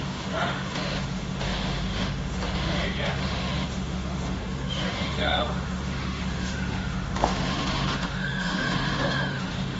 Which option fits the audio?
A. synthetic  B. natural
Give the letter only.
A